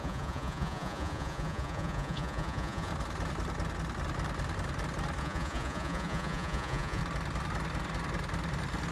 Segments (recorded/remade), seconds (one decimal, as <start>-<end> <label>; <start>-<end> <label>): 0.0-2.9 remade; 2.9-5.2 recorded; 5.2-7.0 remade; 7.0-8.9 recorded